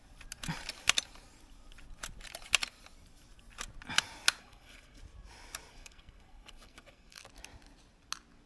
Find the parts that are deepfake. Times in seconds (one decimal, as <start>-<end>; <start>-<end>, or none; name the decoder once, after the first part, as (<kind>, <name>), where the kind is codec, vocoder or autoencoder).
4.4-5.0 (codec, SNAC); 5.7-7.2